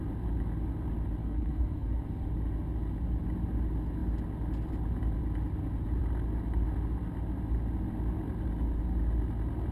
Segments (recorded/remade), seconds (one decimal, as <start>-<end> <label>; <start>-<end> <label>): 0.0-1.2 recorded; 1.2-2.0 remade; 2.0-9.7 recorded